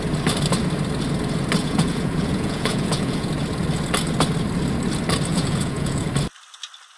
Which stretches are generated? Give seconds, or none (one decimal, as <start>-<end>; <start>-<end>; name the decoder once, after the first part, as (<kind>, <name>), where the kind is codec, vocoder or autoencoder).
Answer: 1.6-3.3 (vocoder, Vocos); 5.3-6.1